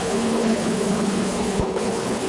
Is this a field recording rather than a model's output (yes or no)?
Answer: no